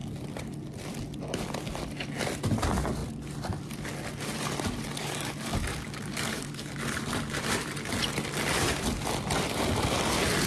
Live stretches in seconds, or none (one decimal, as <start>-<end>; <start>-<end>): 0.0-5.0; 6.7-10.5